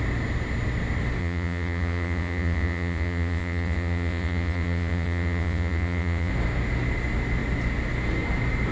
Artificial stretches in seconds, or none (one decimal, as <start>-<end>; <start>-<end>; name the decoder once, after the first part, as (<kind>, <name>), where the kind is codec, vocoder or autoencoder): 1.2-6.3 (vocoder, Vocos)